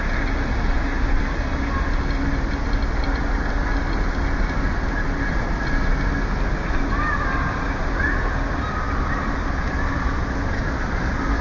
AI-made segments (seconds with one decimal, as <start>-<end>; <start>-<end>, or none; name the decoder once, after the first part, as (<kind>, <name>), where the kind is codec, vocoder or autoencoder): none